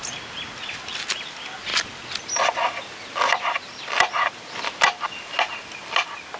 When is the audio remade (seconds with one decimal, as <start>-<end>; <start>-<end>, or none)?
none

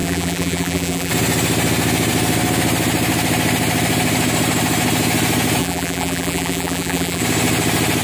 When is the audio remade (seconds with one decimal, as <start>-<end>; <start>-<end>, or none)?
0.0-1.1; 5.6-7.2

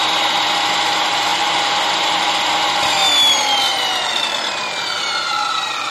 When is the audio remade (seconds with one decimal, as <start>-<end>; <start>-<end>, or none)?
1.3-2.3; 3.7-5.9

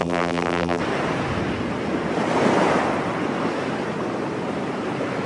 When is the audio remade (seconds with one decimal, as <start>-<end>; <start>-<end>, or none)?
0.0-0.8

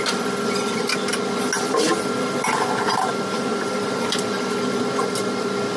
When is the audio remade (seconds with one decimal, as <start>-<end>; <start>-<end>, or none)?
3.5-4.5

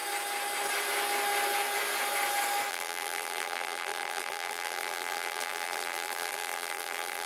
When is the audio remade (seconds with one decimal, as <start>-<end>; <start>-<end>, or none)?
2.7-7.3